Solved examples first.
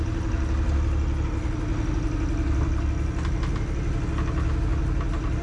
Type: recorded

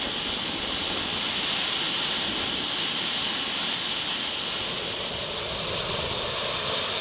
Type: recorded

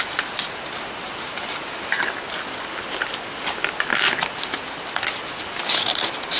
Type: recorded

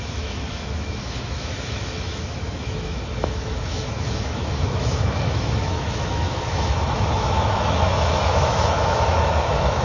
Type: remade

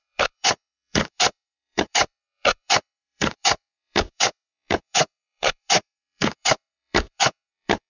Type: remade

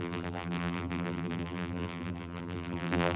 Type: remade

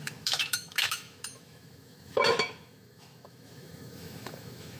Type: remade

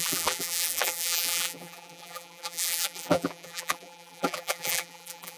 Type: remade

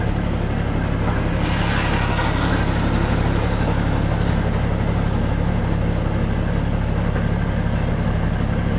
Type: recorded